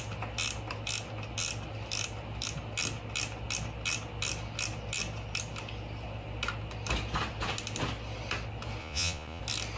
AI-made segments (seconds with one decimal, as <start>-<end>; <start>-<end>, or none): 8.8-9.4